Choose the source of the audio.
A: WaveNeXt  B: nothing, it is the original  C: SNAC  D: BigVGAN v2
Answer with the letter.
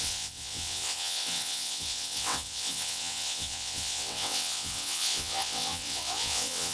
A